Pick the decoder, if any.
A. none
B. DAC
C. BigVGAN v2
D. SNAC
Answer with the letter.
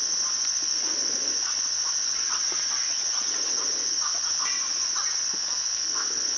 A